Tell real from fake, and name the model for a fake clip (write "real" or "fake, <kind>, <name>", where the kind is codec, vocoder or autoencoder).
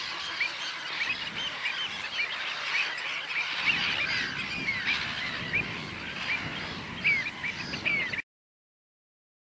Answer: real